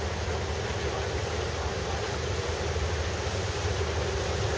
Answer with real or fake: real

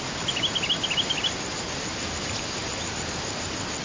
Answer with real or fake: real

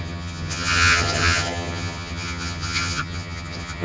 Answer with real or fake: fake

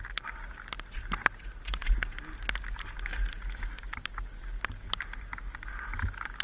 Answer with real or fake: real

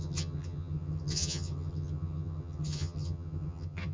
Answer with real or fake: fake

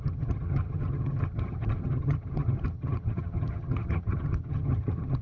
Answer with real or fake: fake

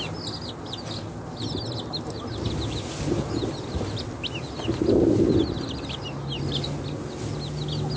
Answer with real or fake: real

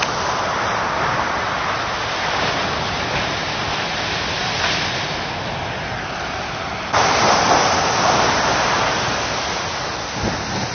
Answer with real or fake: real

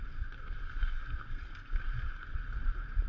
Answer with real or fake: real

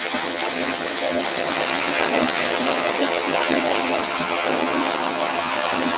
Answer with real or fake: fake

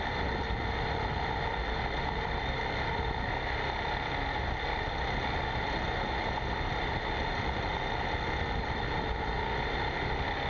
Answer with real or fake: real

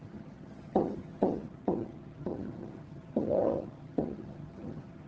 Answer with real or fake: fake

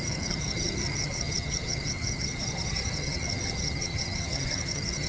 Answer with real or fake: fake